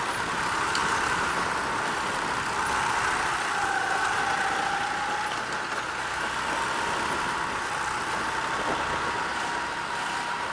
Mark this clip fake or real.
real